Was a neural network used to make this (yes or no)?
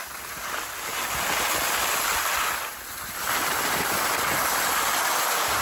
no